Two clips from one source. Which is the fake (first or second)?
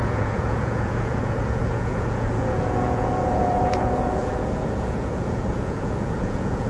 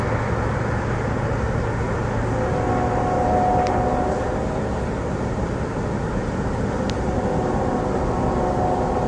first